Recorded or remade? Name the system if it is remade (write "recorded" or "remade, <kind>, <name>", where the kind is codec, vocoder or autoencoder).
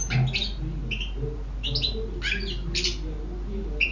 recorded